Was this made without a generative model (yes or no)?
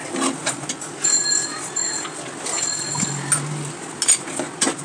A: yes